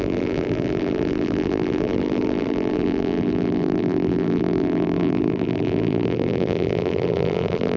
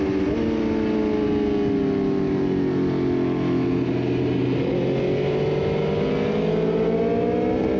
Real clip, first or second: second